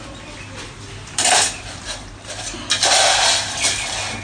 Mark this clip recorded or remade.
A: recorded